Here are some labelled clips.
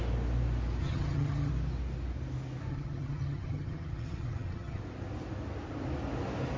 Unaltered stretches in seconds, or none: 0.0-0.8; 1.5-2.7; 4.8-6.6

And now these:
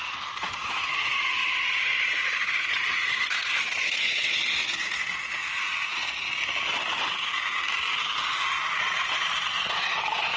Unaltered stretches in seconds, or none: 5.4-8.8